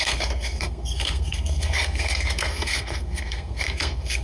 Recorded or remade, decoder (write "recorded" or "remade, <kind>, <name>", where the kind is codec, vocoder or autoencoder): remade, codec, SNAC